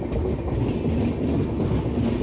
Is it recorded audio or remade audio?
recorded